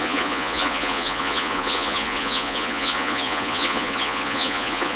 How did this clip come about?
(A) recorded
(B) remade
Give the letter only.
B